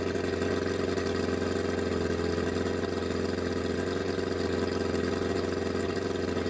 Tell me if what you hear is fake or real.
real